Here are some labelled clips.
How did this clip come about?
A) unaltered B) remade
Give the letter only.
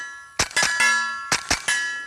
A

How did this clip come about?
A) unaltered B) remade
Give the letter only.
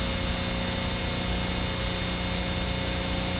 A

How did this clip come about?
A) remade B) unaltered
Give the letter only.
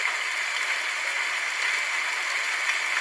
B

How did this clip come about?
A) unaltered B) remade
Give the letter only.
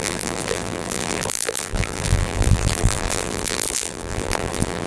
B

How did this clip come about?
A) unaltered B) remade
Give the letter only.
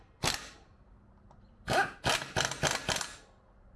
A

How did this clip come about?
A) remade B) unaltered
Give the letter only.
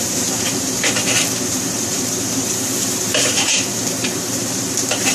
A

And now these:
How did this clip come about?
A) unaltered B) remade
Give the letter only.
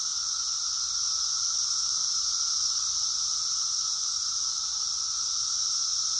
A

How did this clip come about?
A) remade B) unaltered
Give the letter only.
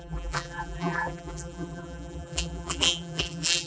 A